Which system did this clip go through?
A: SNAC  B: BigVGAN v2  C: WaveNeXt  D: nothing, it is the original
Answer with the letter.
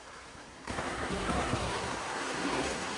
A